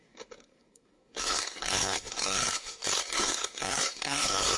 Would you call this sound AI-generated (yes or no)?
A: yes